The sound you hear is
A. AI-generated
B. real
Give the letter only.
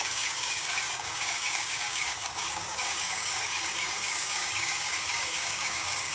A